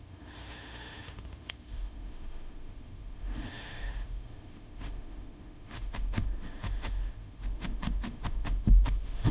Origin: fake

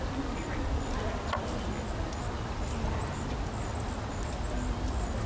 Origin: real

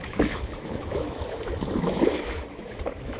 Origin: fake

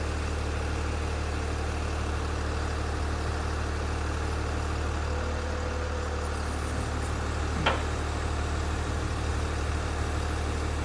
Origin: real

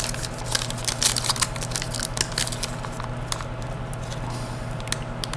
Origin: real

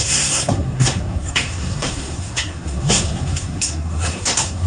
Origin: fake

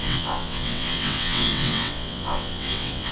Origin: fake